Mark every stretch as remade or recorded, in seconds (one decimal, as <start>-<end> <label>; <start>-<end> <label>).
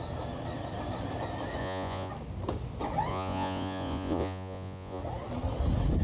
0.0-1.6 recorded; 1.6-2.1 remade; 2.1-3.1 recorded; 3.1-5.0 remade; 5.0-6.0 recorded